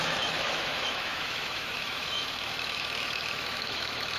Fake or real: fake